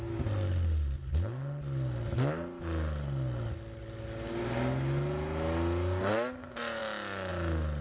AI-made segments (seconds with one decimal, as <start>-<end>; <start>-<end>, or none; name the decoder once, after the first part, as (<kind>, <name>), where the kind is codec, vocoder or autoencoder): none